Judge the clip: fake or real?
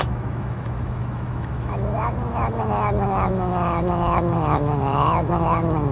fake